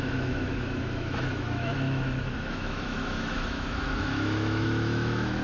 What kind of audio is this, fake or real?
fake